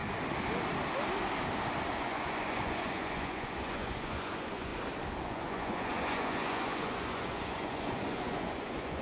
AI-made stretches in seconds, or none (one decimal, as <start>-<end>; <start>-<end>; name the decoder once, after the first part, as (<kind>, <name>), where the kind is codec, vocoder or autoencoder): 2.0-4.7 (vocoder, Vocos); 5.2-9.0